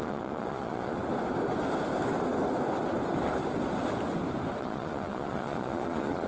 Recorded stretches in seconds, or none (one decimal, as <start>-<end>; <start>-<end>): 1.0-4.6